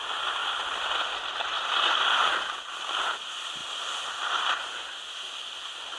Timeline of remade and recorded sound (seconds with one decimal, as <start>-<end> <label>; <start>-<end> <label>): 0.0-0.4 recorded; 0.4-1.4 remade; 1.4-2.2 recorded; 2.2-3.0 remade; 3.0-6.0 recorded